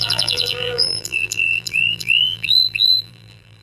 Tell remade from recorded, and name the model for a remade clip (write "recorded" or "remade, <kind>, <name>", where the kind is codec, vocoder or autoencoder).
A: remade, vocoder, BigVGAN v2